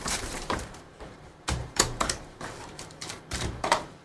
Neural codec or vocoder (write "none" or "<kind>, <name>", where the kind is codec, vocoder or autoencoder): vocoder, BigVGAN v2